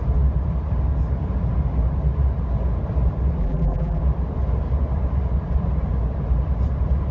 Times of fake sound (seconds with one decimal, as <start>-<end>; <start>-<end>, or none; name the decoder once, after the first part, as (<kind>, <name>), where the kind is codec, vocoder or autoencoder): 3.4-4.0 (vocoder, BigVGAN v2)